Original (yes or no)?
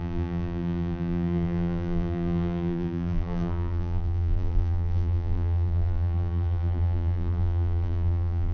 no